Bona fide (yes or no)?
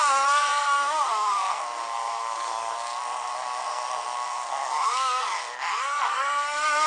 no